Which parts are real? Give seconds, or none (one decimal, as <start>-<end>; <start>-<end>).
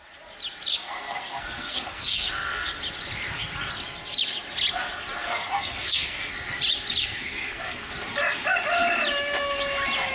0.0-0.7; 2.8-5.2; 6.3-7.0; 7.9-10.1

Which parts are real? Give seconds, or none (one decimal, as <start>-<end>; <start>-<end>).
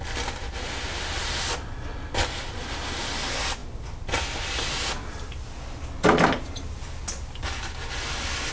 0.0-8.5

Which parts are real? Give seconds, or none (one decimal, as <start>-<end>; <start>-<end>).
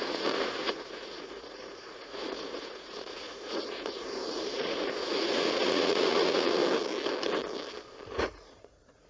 6.6-8.2